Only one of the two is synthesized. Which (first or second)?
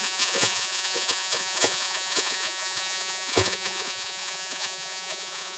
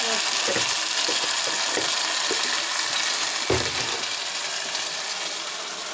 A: first